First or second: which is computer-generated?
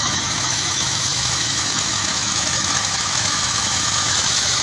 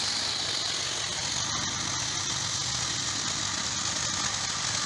first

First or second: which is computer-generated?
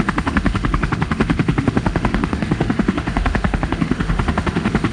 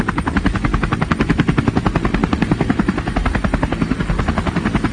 first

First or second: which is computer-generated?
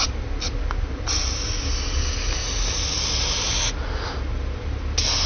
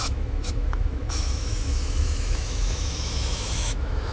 second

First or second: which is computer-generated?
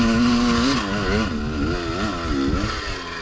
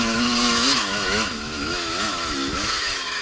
second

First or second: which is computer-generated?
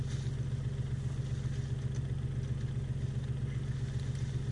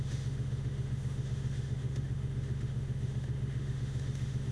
second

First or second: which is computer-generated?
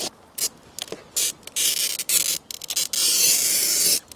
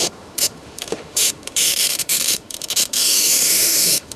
second